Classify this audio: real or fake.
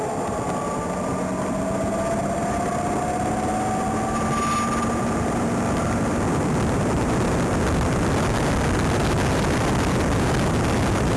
fake